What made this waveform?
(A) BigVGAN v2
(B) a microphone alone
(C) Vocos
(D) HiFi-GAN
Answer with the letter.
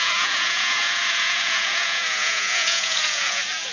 C